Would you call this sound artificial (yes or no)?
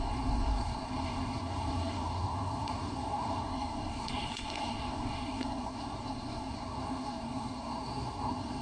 yes